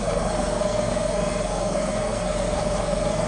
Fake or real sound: fake